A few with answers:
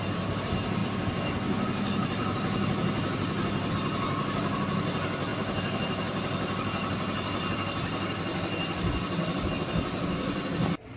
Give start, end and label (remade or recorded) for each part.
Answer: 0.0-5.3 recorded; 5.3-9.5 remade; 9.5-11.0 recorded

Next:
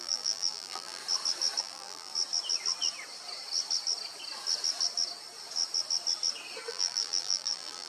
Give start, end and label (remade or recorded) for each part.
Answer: 0.0-1.0 remade; 1.0-1.6 recorded; 1.6-2.1 remade; 2.1-6.7 recorded; 6.7-7.9 remade

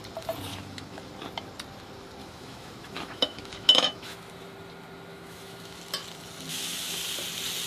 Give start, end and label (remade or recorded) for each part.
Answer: 0.0-0.5 recorded; 0.5-1.1 remade; 1.1-2.2 recorded; 2.2-4.3 remade; 4.3-5.1 recorded; 5.1-5.8 remade; 5.8-6.5 recorded; 6.5-7.0 remade; 7.0-7.7 recorded

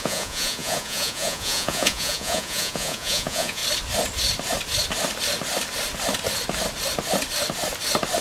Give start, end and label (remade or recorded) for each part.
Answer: 0.0-3.6 remade; 3.6-8.2 recorded

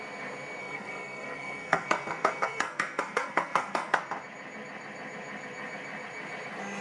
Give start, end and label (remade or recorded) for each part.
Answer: 0.0-0.6 recorded; 0.6-4.0 remade; 4.0-6.8 recorded